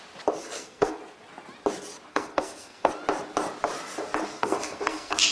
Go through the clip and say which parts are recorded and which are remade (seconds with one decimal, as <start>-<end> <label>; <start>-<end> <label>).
0.0-0.4 recorded; 0.4-1.0 remade; 1.0-2.1 recorded; 2.1-2.9 remade; 2.9-4.3 recorded; 4.3-5.3 remade